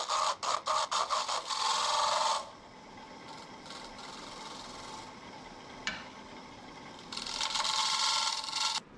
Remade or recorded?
recorded